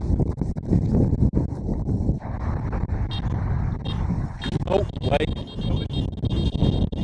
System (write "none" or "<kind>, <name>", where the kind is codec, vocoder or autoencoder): none